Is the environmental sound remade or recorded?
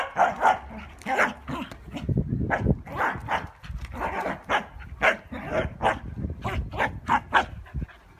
recorded